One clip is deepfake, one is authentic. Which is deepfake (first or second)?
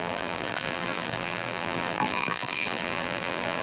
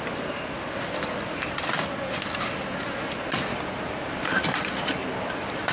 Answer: first